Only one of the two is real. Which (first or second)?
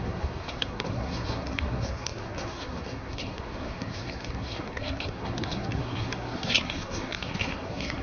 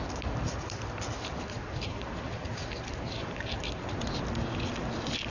second